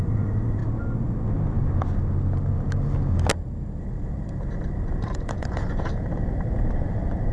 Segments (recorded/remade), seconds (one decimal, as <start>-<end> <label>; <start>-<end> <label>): 0.0-0.6 remade; 0.6-3.8 recorded; 3.8-7.3 remade